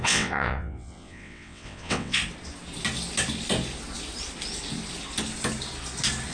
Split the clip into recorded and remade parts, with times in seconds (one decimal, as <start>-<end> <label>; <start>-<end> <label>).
0.0-2.2 remade; 2.2-6.3 recorded